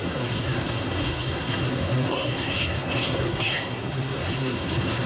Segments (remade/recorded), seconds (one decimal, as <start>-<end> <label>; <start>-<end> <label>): 0.0-5.1 remade